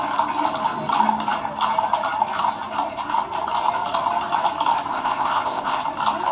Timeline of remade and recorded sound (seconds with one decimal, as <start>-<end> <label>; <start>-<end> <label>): 0.0-4.9 recorded; 4.9-5.8 remade; 5.8-6.3 recorded